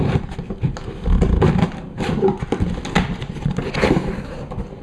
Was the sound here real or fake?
real